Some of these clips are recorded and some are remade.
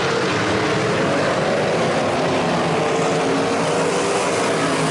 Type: recorded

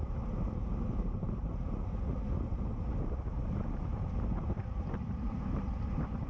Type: remade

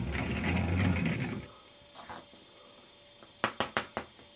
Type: recorded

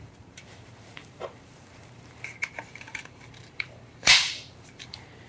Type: remade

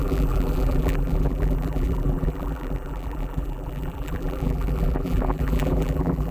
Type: remade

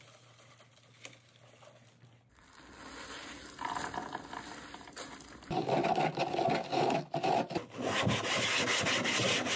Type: recorded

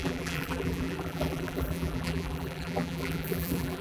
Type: remade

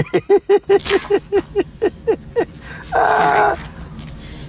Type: recorded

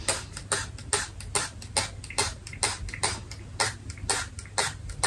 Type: recorded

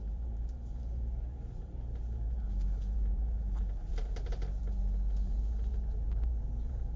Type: remade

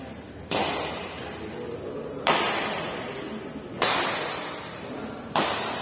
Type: remade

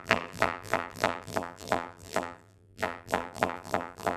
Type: remade